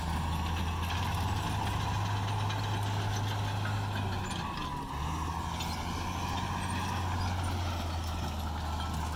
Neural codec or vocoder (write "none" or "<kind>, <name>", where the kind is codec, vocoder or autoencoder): none